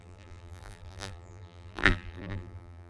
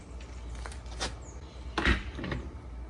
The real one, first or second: second